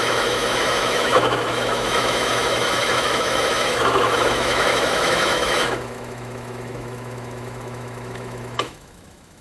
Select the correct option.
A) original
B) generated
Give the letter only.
B